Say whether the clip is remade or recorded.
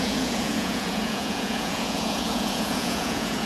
remade